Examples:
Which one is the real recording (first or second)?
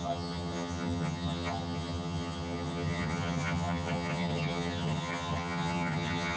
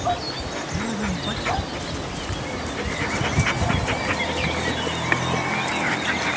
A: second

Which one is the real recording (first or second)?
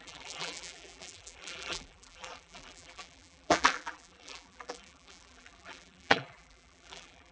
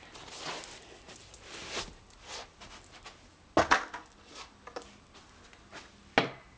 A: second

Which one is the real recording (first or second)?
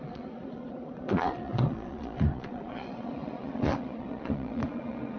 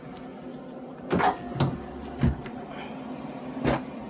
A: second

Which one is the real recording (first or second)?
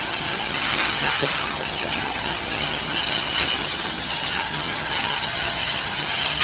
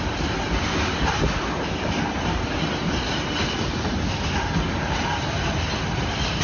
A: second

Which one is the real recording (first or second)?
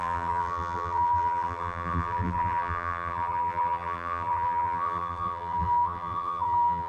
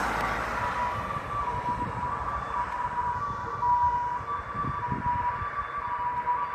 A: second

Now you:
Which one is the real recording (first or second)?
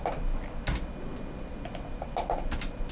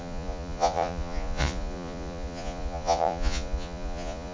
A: first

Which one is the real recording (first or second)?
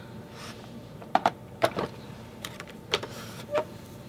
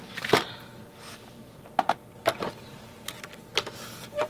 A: second